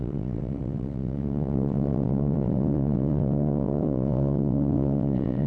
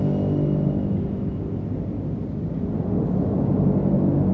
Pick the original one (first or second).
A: second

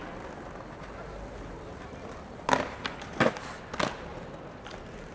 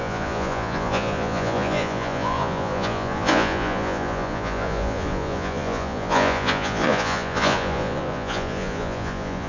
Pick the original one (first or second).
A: first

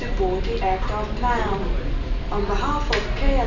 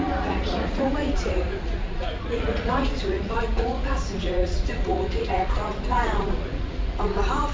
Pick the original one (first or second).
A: first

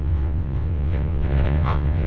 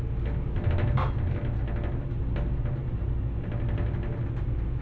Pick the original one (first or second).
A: second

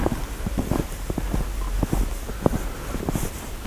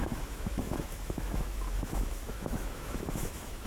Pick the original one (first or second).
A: first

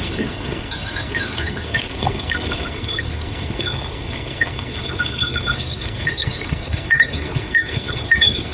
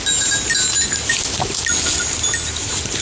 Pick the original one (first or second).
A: second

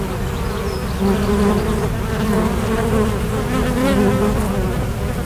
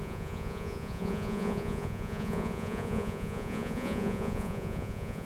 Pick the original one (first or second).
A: first